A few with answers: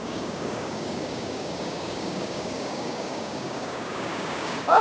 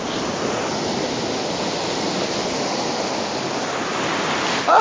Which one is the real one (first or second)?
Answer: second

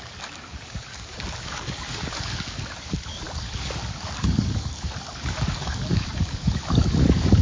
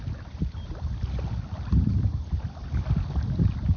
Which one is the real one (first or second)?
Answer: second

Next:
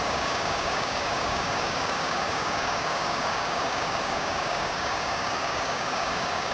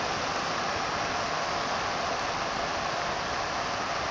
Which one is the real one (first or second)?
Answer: second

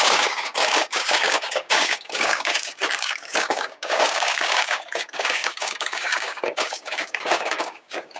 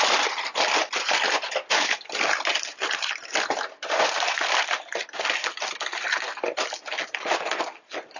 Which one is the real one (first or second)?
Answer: second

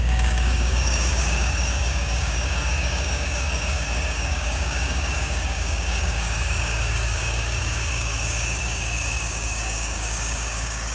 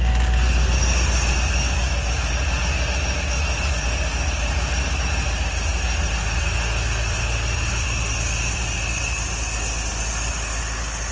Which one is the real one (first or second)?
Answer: second